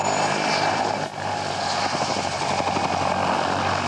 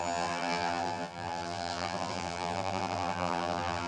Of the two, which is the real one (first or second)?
first